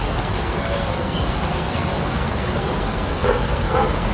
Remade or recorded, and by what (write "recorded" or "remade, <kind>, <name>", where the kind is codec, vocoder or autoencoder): remade, codec, SNAC